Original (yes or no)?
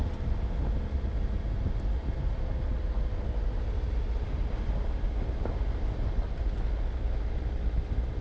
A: yes